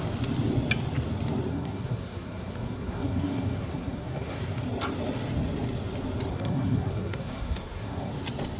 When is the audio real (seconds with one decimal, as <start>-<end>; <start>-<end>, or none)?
0.0-1.5; 4.4-6.3; 8.1-8.6